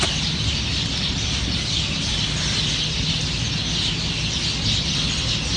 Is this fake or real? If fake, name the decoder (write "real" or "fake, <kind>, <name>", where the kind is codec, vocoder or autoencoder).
real